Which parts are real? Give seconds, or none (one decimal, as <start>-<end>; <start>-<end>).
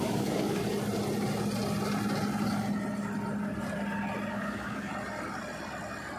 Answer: 0.6-4.3; 4.9-6.2